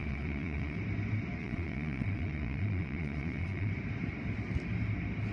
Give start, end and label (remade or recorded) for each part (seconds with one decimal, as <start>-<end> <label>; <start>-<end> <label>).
0.0-0.8 remade; 0.8-1.4 recorded; 1.4-3.7 remade; 3.7-5.3 recorded